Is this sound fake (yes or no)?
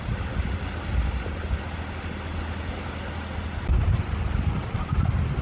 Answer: no